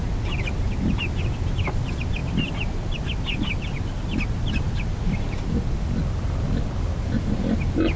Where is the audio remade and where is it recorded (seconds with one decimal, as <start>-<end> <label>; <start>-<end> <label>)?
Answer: 0.0-8.0 recorded